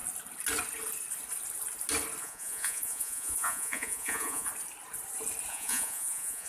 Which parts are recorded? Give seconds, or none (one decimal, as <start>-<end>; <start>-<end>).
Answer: 0.0-2.2; 4.5-5.5